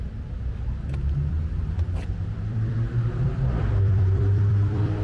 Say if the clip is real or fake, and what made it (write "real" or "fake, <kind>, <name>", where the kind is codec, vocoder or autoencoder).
fake, vocoder, BigVGAN v2